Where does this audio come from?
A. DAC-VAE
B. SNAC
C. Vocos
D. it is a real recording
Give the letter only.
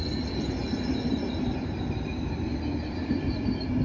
D